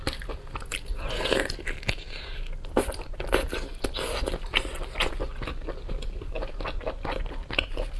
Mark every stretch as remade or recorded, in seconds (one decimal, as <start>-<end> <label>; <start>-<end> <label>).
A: 0.0-8.0 recorded